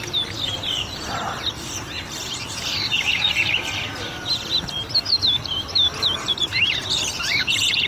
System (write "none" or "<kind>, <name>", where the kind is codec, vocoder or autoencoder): vocoder, BigVGAN v2